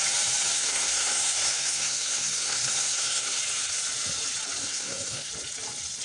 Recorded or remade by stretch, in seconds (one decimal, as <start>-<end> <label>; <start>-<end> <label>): 0.0-0.5 recorded; 0.5-3.4 remade; 3.4-4.6 recorded; 4.6-5.3 remade; 5.3-6.0 recorded